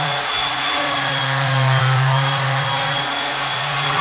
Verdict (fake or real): fake